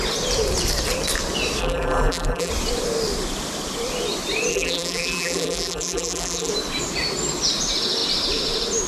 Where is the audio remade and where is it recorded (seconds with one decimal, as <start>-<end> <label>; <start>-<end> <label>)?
0.0-1.6 recorded; 1.6-2.5 remade; 2.5-4.5 recorded; 4.5-6.5 remade; 6.5-8.9 recorded